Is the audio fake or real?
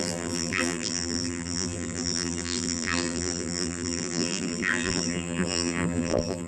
fake